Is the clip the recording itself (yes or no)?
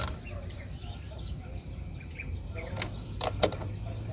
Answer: yes